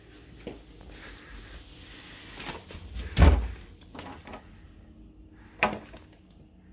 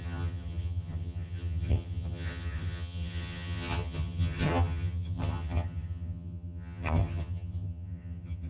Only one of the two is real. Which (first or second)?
first